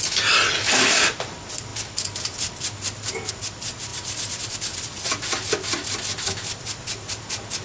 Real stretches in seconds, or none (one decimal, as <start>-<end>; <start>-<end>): 0.0-7.6